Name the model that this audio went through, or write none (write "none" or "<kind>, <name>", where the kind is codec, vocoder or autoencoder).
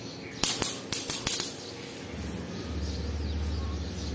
none